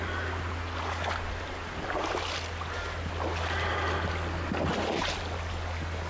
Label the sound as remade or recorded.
recorded